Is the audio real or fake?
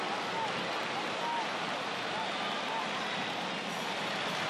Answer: real